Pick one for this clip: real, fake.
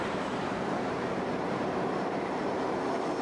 fake